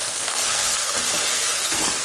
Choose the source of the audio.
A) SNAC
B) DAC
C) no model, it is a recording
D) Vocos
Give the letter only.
A